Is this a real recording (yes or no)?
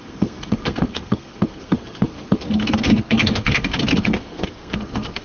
no